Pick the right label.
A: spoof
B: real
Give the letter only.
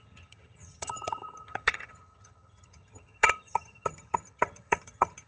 A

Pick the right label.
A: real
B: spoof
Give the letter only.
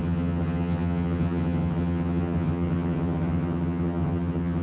B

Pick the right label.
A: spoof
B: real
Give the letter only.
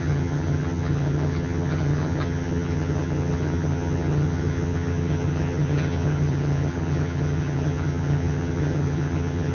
A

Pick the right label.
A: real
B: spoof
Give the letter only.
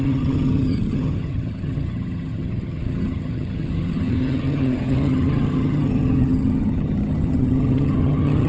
B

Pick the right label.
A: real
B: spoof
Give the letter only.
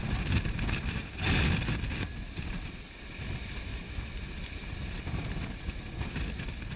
A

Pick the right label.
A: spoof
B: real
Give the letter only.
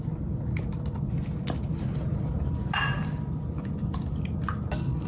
B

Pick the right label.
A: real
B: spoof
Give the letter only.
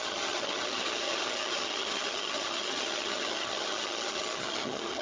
B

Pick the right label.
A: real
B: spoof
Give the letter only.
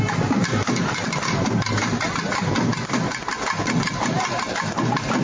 A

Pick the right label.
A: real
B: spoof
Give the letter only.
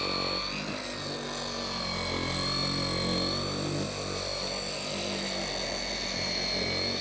A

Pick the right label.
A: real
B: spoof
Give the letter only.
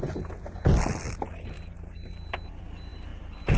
A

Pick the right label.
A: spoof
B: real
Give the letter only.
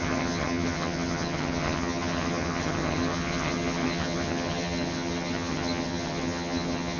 A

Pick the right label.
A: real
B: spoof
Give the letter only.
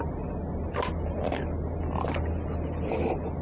A